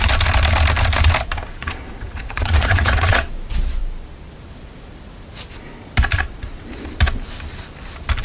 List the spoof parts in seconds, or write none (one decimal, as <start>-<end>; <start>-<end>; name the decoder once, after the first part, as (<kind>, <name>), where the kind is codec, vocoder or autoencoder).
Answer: 1.6-3.3 (vocoder, Vocos); 6.1-6.6